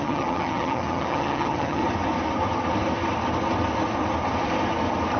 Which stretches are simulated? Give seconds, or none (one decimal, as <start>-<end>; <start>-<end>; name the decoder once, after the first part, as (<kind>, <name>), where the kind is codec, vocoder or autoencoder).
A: 0.0-1.8 (vocoder, HiFi-GAN)